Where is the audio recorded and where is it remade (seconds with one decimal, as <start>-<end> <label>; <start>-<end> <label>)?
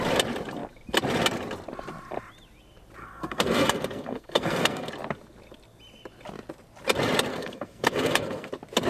0.0-3.0 recorded; 3.0-4.9 remade; 4.9-7.3 recorded; 7.3-8.5 remade; 8.5-8.9 recorded